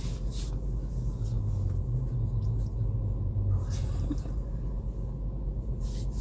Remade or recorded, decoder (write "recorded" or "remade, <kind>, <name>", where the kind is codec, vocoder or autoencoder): recorded